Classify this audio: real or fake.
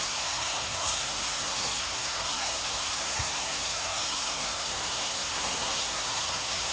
fake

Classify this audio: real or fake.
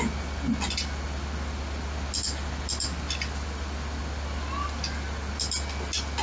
real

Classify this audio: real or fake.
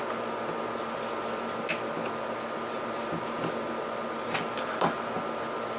real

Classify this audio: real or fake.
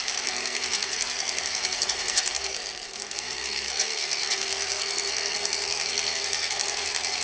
fake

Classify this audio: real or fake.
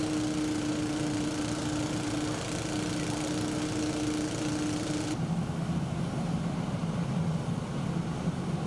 real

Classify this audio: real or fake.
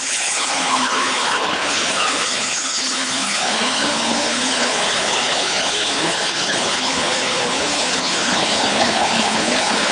fake